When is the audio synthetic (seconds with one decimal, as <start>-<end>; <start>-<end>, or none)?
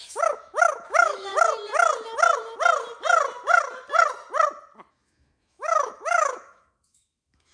0.0-1.3; 4.9-7.5